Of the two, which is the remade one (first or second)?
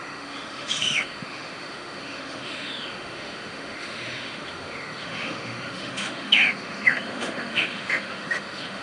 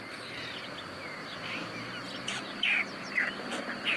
first